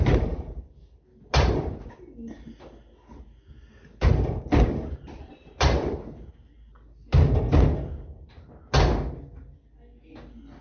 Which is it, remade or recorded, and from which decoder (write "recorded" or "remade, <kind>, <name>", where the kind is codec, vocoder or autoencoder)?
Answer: recorded